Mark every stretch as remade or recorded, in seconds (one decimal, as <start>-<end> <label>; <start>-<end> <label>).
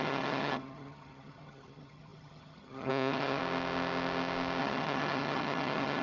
0.0-3.4 remade; 3.4-4.6 recorded; 4.6-6.0 remade